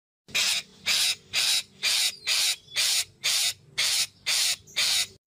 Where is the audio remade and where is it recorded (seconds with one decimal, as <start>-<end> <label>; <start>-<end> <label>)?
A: 0.0-5.3 recorded